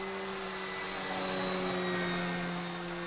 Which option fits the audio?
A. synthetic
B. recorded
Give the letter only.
B